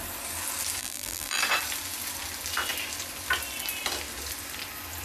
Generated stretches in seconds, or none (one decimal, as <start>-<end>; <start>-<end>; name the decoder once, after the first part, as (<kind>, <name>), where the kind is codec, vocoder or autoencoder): 0.8-1.4 (vocoder, BigVGAN v2)